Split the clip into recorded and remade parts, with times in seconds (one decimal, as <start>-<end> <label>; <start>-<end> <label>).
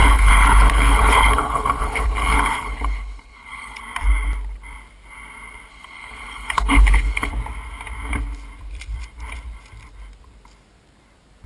0.0-3.8 remade; 3.8-5.7 recorded; 5.7-7.3 remade; 7.3-11.5 recorded